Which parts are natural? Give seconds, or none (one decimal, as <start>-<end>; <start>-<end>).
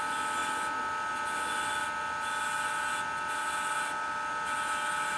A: 0.0-5.2